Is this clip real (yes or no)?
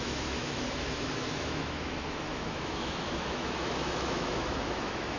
no